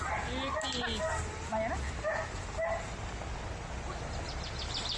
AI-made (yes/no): no